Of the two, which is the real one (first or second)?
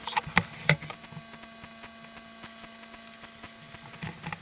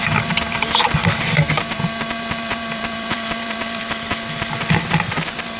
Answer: first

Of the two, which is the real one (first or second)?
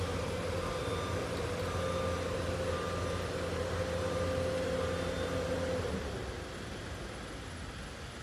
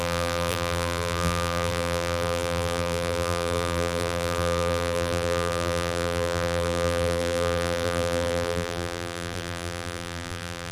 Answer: first